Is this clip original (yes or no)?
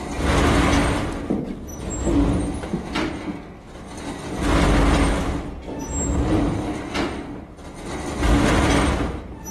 yes